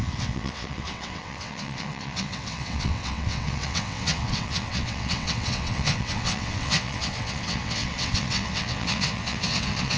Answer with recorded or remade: remade